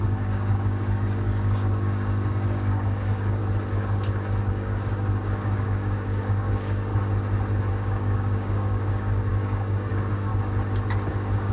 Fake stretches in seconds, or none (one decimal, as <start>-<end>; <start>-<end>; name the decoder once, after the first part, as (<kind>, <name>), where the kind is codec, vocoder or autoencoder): 0.0-3.4 (codec, DAC); 4.5-6.9; 7.7-10.3; 11.1-11.5